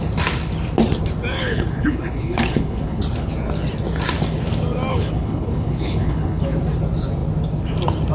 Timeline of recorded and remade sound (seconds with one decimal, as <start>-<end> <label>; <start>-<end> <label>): 0.0-1.3 recorded; 1.3-3.0 remade; 3.0-4.9 recorded; 4.9-6.4 remade; 6.4-8.1 recorded